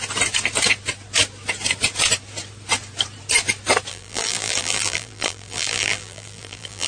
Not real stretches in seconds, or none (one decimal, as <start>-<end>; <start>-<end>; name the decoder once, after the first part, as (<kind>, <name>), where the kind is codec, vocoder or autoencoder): 3.9-6.9 (vocoder, BigVGAN v2)